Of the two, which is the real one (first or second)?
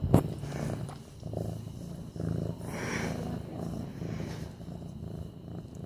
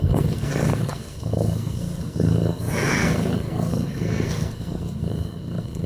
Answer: first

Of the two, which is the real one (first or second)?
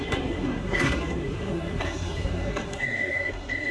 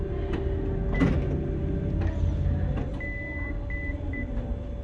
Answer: second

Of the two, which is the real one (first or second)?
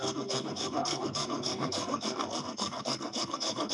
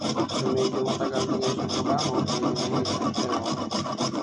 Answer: second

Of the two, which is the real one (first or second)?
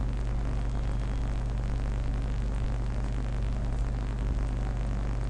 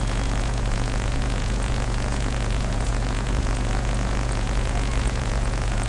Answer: first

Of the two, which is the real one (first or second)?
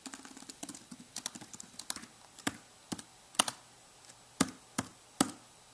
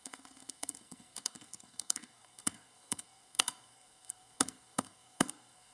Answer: first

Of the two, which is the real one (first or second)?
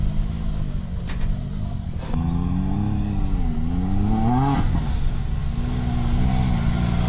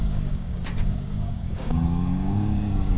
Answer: first